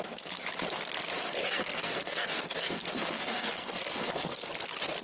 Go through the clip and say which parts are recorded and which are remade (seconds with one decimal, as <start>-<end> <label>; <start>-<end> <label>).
0.0-1.4 recorded; 1.4-4.4 remade; 4.4-5.0 recorded